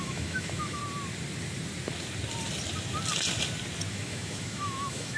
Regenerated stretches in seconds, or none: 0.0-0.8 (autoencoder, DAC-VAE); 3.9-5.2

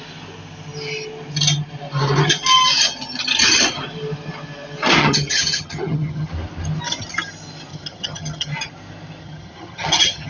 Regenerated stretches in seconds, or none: 5.0-6.3 (vocoder, HiFi-GAN); 7.7-8.5; 9.2-10.3